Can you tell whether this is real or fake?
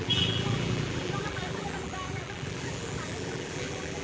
fake